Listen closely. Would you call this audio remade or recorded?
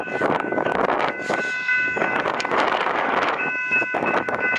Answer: remade